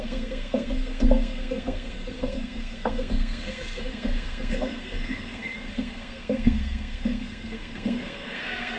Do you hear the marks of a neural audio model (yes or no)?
yes